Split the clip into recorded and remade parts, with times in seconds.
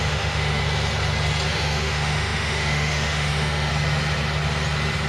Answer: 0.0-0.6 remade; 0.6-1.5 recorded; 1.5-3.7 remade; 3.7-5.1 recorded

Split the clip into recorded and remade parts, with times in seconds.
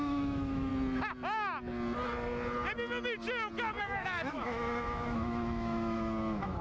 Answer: 0.0-0.7 remade; 0.7-3.8 recorded; 3.8-6.6 remade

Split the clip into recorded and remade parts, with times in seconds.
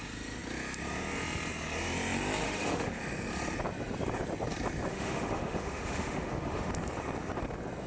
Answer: 0.0-2.4 recorded; 2.4-3.0 remade; 3.0-4.9 recorded; 4.9-6.7 remade; 6.7-7.9 recorded